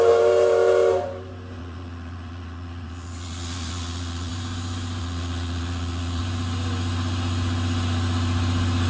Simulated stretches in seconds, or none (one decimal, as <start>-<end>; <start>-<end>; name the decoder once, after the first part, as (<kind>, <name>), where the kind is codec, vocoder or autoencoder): 1.6-4.3 (vocoder, Vocos); 5.0-6.2